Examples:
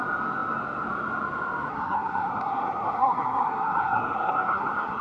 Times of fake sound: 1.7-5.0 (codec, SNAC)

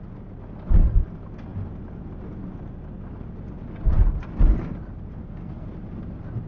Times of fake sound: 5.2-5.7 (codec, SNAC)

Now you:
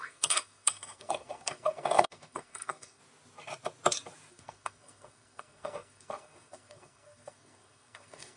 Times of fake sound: 0.0-3.0 (codec, SNAC); 4.3-8.4

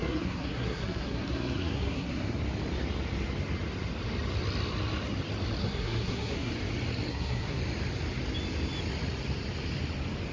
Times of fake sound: 0.0-2.4 (codec, SNAC); 5.6-6.5; 7.1-7.6

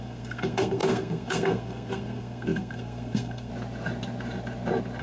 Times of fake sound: 0.0-3.5 (codec, SNAC)

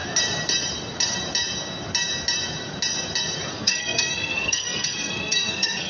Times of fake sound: 3.5-5.9 (codec, SNAC)

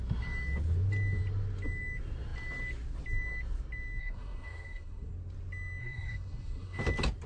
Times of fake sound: 4.0-5.1 (codec, SNAC); 5.8-6.8

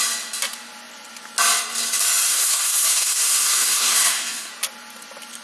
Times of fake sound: 2.3-4.5 (codec, SNAC)